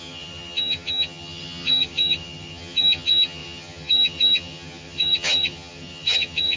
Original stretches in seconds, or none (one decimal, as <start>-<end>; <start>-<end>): none